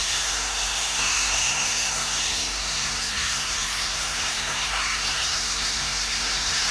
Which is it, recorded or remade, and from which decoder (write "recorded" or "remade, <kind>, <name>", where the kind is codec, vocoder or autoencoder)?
remade, codec, SNAC